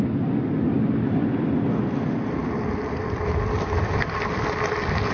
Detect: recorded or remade recorded